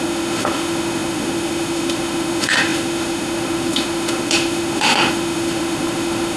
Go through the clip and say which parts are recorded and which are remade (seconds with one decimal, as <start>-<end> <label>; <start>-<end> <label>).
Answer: 0.0-6.4 remade